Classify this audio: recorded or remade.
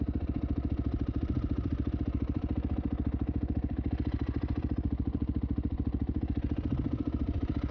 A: remade